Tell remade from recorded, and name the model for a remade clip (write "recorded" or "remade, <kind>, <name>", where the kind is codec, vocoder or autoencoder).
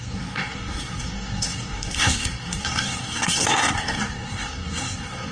remade, codec, SNAC